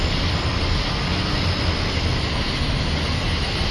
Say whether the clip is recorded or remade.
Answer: recorded